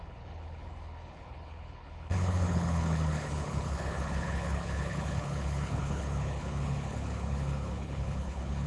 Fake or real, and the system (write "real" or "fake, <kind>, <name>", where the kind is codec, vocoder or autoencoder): fake, codec, HILCodec